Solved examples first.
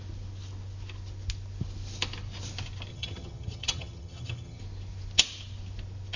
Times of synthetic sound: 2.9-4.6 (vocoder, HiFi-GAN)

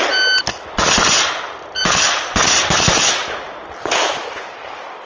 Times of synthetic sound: none

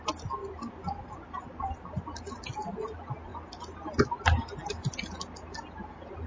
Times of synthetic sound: none

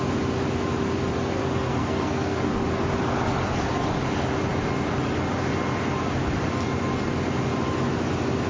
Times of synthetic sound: 1.4-2.5 (codec, SNAC)

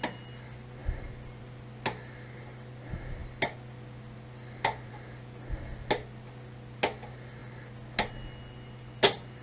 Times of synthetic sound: none

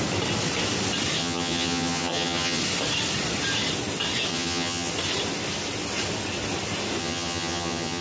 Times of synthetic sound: 1.2-2.6 (vocoder, HiFi-GAN); 4.3-4.9; 7.0-8.0

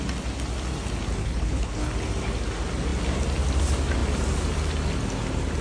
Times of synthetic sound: 1.2-1.9 (codec, HILCodec)

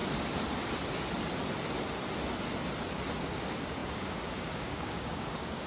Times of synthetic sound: 3.2-5.7 (codec, DAC)